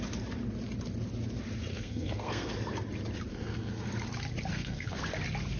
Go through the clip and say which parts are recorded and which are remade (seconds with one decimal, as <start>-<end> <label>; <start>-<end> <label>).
0.0-1.7 recorded; 1.7-2.5 remade; 2.5-3.3 recorded; 3.3-3.9 remade; 3.9-4.5 recorded; 4.5-5.0 remade; 5.0-5.6 recorded